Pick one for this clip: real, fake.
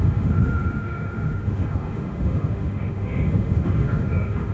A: fake